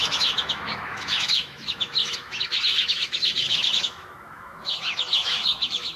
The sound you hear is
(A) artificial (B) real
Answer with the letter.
A